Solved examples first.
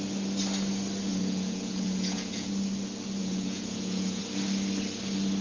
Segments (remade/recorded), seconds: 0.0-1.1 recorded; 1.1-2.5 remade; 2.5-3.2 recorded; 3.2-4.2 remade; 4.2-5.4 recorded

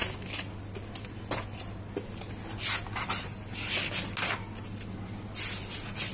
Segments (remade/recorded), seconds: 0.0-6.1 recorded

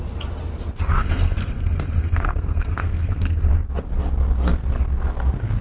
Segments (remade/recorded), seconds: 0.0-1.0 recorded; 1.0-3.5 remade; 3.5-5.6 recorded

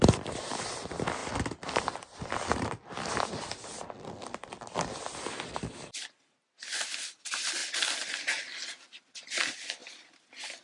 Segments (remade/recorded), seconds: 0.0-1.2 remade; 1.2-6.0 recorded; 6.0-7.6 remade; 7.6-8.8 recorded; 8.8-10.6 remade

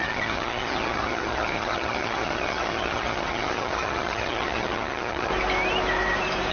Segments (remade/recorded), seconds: 0.0-5.3 remade; 5.3-6.5 recorded

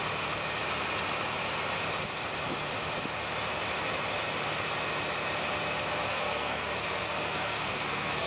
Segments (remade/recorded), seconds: 0.0-6.1 recorded; 6.1-8.3 remade